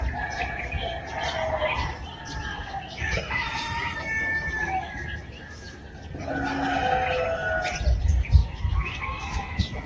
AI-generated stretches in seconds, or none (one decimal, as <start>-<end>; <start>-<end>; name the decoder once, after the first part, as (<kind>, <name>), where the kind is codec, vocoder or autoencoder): 2.5-5.8 (autoencoder, DAC-VAE); 8.4-9.9